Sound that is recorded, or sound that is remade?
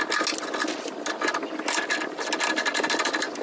recorded